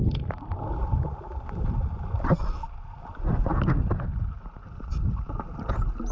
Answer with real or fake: real